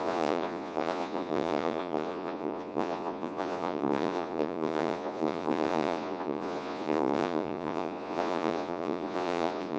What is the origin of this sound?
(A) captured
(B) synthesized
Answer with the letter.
B